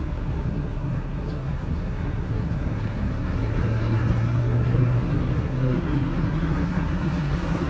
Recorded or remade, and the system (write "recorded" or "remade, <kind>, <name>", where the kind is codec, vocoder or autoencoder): remade, codec, SNAC